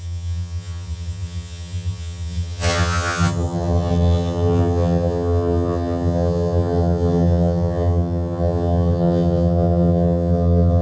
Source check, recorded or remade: remade